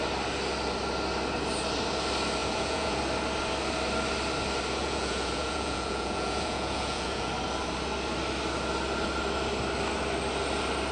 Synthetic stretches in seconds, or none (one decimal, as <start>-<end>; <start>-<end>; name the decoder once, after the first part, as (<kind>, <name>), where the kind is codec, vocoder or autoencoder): 2.4-3.0 (vocoder, Vocos); 4.8-7.3